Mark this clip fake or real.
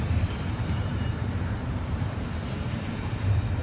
fake